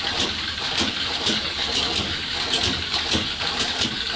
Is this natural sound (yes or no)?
no